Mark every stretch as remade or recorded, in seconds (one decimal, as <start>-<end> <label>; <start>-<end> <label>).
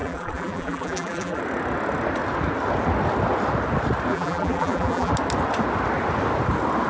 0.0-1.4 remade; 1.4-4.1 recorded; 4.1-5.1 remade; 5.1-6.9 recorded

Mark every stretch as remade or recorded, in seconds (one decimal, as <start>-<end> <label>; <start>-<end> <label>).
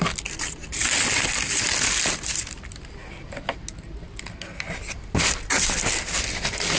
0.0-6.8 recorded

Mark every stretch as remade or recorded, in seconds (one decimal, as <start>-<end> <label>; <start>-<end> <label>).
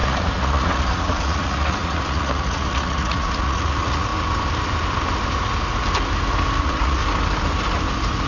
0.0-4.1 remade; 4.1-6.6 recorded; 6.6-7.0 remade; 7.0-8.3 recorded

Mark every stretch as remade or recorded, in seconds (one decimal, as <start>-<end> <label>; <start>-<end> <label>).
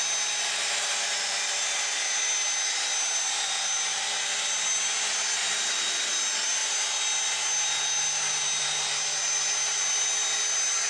0.0-5.4 recorded; 5.4-6.1 remade; 6.1-10.9 recorded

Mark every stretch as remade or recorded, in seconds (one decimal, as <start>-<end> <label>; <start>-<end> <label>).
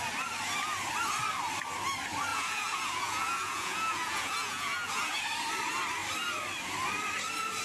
0.0-2.3 recorded; 2.3-5.2 remade; 5.2-7.6 recorded